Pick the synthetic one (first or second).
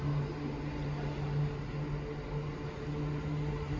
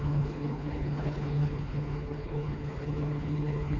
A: second